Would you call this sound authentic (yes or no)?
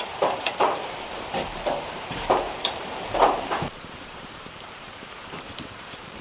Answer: no